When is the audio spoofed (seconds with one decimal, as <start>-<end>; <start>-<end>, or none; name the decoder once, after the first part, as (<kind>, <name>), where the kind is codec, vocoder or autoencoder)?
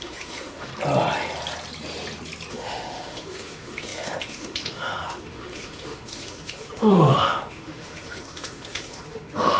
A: 0.0-0.7 (autoencoder, DAC-VAE); 2.5-9.6